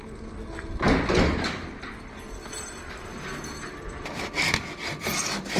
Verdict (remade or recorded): recorded